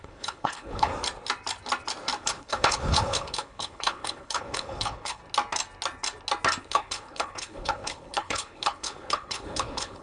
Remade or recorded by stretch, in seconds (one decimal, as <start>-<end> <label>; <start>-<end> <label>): 0.0-0.9 remade; 0.9-2.2 recorded; 2.2-5.2 remade; 5.2-6.6 recorded; 6.6-10.0 remade